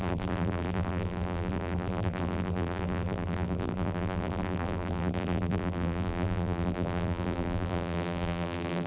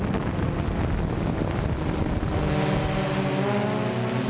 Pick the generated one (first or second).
first